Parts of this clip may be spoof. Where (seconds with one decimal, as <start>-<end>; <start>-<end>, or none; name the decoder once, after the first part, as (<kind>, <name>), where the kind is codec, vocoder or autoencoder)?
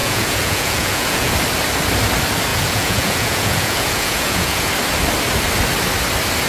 0.0-1.3 (vocoder, Vocos); 2.5-4.7